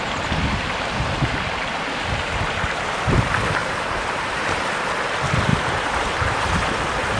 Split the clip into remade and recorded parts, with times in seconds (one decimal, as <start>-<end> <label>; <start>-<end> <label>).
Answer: 0.0-3.6 recorded; 3.6-4.6 remade; 4.6-5.5 recorded; 5.5-6.8 remade; 6.8-7.2 recorded